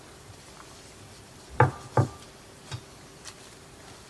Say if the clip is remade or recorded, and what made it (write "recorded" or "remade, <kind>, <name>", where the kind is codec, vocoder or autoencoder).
remade, vocoder, BigVGAN v2